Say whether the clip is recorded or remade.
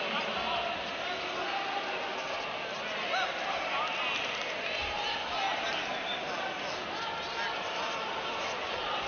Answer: recorded